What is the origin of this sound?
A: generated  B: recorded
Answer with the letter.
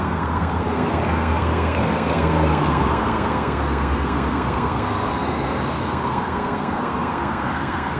A